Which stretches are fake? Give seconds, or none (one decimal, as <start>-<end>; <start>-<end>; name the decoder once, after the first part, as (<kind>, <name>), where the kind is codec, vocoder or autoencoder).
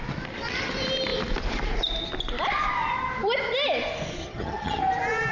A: 4.2-4.8 (vocoder, HiFi-GAN)